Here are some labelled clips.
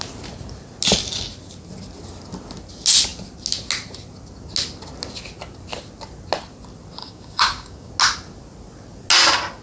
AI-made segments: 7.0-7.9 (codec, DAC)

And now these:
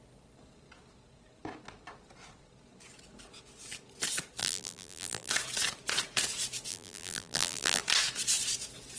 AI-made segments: 4.4-5.3 (vocoder, BigVGAN v2); 6.7-7.8

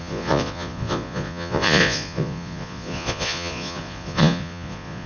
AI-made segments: 0.0-5.1 (vocoder, Vocos)

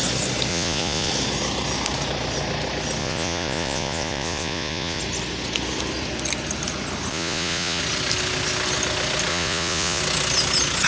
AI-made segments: 0.5-1.1 (vocoder, Vocos); 3.0-5.0; 7.1-7.8; 9.3-10.0